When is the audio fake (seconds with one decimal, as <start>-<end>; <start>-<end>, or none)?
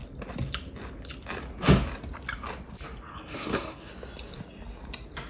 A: 3.1-3.9